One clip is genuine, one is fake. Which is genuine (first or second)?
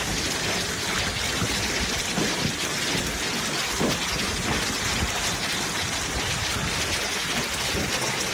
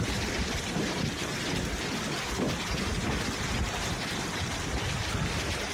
first